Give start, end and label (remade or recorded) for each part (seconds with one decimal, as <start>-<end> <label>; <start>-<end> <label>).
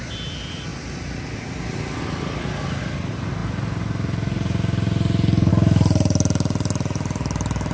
0.0-7.7 recorded